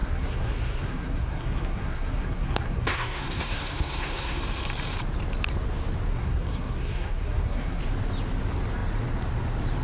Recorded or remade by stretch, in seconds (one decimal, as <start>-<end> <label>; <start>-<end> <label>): 0.0-4.4 remade; 4.4-6.1 recorded; 6.1-7.8 remade; 7.8-9.8 recorded